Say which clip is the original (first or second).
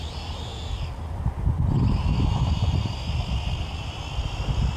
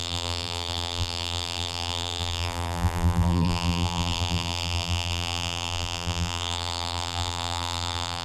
first